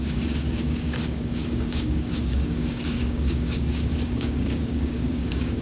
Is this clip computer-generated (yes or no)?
yes